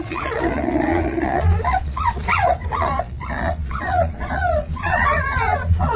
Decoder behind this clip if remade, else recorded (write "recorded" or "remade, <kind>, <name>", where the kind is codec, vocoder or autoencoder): remade, vocoder, Vocos